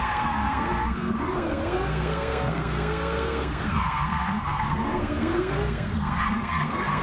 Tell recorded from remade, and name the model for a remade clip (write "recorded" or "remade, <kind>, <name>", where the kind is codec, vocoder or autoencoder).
remade, codec, SNAC